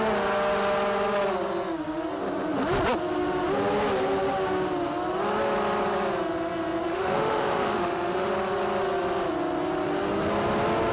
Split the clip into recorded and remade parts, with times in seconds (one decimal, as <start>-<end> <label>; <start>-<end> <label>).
0.0-6.9 recorded; 6.9-8.3 remade; 8.3-10.9 recorded